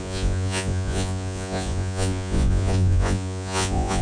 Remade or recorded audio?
remade